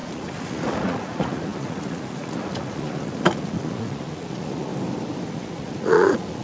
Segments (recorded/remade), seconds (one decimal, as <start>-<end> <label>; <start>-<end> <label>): 0.0-4.7 remade; 4.7-5.3 recorded; 5.3-6.4 remade